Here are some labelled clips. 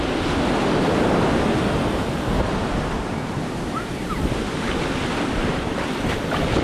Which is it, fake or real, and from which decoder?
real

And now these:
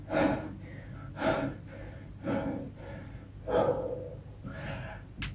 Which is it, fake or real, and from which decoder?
real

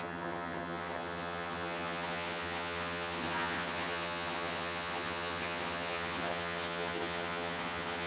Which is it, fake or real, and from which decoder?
fake, vocoder, HiFi-GAN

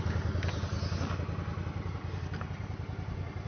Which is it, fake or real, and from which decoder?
real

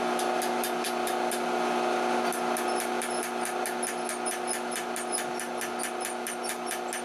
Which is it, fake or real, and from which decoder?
real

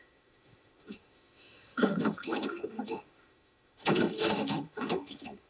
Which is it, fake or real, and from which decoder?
fake, autoencoder, DAC-VAE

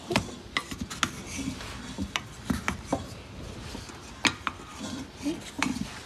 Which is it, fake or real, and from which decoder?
real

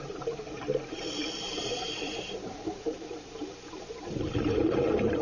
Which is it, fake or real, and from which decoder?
fake, vocoder, BigVGAN v2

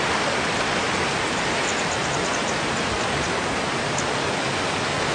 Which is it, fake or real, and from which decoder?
real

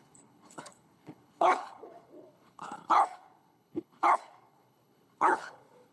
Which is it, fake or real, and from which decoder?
fake, codec, HILCodec